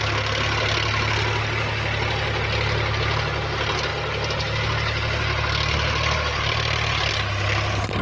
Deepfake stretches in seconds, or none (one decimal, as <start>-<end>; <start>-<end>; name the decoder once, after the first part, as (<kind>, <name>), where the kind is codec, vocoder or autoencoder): none